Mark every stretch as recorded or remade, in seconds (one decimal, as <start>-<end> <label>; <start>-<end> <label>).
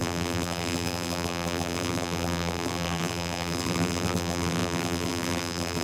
0.0-5.8 remade